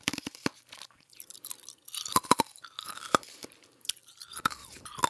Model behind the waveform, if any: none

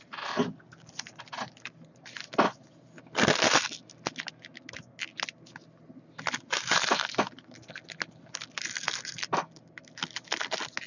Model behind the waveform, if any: none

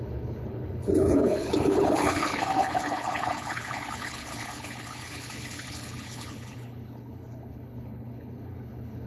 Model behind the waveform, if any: codec, HILCodec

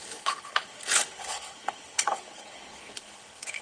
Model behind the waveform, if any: codec, HILCodec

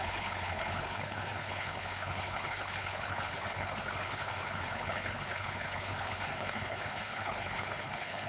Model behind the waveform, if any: codec, HILCodec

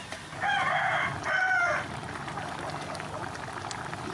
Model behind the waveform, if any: none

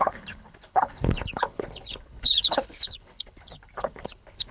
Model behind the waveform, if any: codec, HILCodec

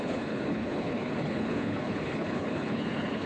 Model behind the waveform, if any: codec, HILCodec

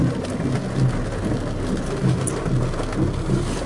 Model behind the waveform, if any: none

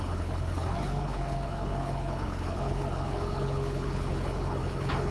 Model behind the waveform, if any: codec, HILCodec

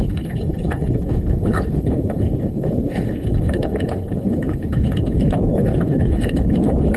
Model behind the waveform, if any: codec, HILCodec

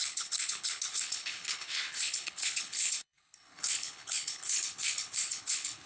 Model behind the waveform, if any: codec, HILCodec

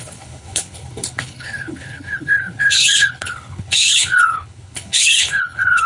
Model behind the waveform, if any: codec, HILCodec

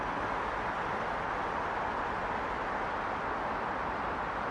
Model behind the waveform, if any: none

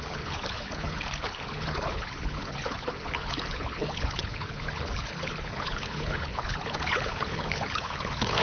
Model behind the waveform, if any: codec, HILCodec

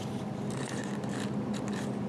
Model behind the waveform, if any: none